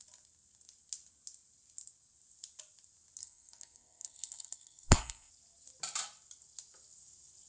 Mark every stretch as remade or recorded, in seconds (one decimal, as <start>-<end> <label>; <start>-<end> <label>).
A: 0.0-3.2 recorded; 3.2-5.3 remade; 5.3-7.5 recorded